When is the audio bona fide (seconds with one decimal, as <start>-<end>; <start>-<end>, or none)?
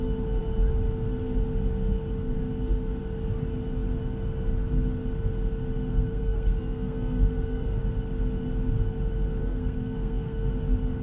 0.0-5.9; 7.8-9.4; 10.5-11.0